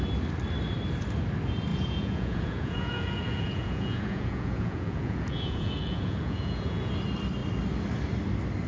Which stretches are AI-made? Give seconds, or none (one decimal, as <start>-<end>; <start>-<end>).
1.7-6.9